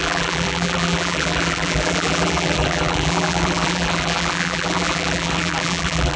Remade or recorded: remade